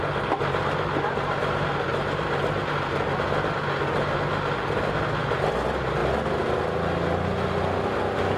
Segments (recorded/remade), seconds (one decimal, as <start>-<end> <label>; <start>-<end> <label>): 0.0-8.4 recorded